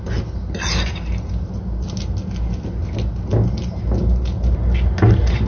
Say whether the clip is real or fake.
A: real